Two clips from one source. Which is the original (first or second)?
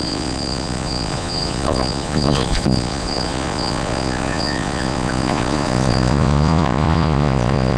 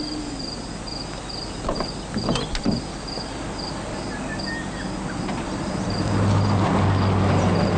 second